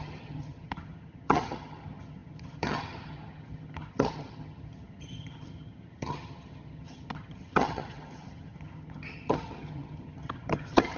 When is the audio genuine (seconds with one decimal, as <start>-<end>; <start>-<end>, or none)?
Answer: none